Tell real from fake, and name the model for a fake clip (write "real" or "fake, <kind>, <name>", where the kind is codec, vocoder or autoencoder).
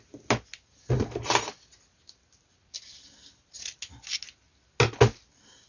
real